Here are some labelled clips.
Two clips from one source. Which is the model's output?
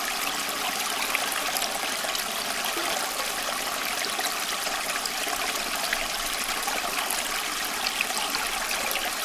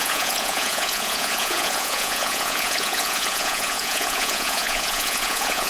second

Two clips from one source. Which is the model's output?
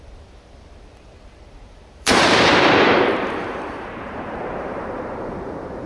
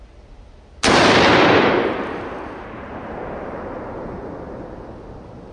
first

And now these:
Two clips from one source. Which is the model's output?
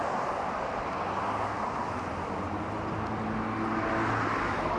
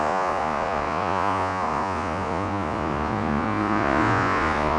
second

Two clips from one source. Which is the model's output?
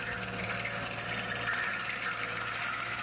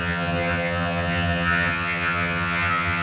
second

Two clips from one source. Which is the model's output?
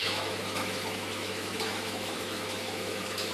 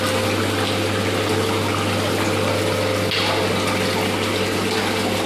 first